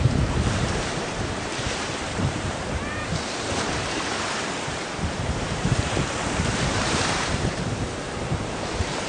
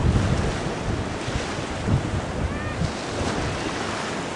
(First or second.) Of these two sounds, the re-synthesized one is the first